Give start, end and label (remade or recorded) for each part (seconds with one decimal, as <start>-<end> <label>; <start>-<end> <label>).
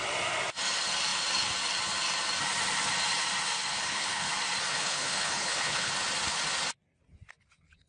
0.0-3.7 recorded; 3.7-4.3 remade; 4.3-4.7 recorded; 4.7-5.9 remade; 5.9-7.9 recorded